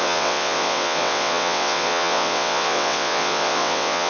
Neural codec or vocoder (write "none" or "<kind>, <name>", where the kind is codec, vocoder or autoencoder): vocoder, WaveNeXt